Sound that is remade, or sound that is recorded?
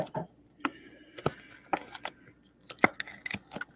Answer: recorded